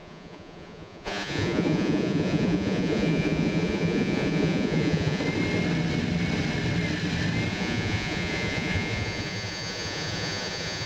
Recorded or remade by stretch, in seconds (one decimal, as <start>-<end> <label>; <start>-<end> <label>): 0.0-5.2 remade; 5.2-7.5 recorded; 7.5-10.9 remade